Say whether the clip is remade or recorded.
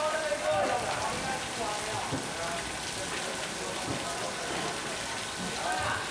recorded